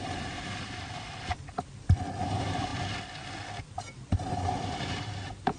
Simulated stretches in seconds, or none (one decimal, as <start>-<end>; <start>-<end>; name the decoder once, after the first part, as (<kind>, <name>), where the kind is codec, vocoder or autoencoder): 0.0-1.3 (vocoder, BigVGAN v2); 2.2-2.7; 4.1-5.6